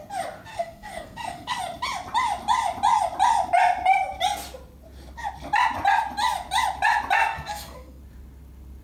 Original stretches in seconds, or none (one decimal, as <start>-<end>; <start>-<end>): 0.0-0.5; 1.6-7.3; 8.0-8.8